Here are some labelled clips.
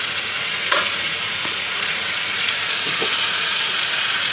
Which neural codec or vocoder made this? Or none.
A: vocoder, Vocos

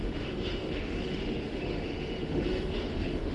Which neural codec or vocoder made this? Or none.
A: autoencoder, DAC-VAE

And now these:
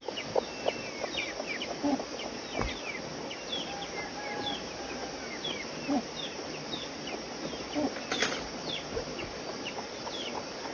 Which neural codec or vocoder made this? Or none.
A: none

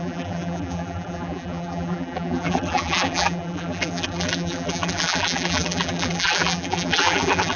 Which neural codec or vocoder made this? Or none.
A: vocoder, BigVGAN v2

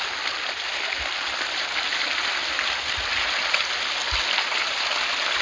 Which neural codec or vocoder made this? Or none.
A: none